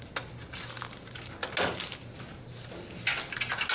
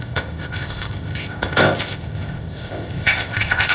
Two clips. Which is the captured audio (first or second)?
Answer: first